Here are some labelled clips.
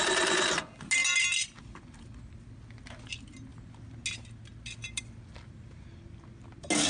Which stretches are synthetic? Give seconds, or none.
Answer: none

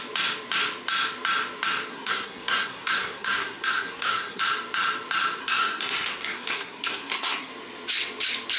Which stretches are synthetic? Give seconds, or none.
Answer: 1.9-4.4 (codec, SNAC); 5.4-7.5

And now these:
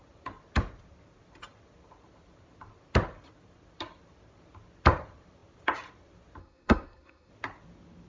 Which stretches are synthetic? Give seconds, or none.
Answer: 6.4-7.3 (codec, SNAC)

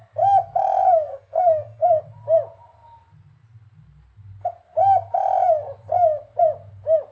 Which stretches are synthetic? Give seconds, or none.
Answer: 0.8-2.0 (codec, SNAC)

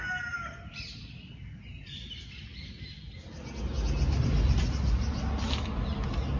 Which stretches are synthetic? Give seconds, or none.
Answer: none